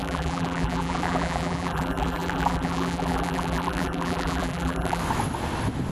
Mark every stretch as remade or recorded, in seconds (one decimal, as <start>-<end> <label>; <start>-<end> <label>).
0.0-5.0 remade; 5.0-5.9 recorded